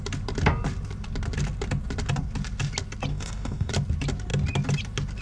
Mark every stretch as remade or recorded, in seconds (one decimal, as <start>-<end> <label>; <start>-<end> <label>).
0.0-3.1 recorded; 3.1-3.7 remade; 3.7-5.2 recorded